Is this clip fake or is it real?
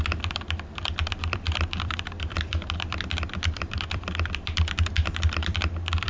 fake